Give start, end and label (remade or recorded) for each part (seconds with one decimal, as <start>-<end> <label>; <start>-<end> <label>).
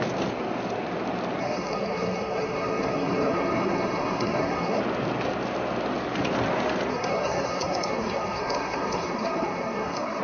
0.0-1.4 recorded; 1.4-4.8 remade; 4.8-6.9 recorded; 6.9-10.2 remade